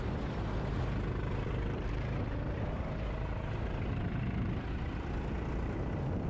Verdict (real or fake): fake